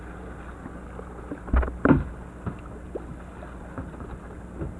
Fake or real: real